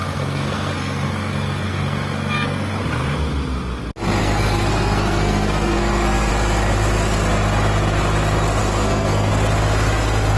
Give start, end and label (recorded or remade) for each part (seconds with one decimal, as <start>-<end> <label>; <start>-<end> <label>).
0.0-2.8 remade; 2.8-4.2 recorded; 4.2-6.3 remade; 6.3-8.6 recorded; 8.6-9.3 remade; 9.3-10.4 recorded